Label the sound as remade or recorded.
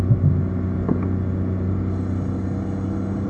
recorded